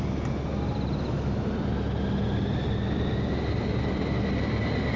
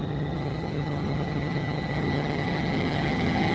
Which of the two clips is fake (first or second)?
second